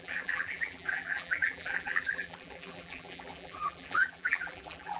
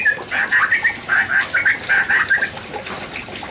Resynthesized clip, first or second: first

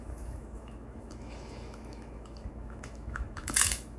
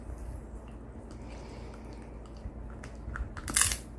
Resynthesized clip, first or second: first